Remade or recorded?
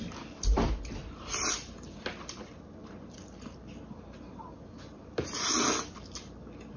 recorded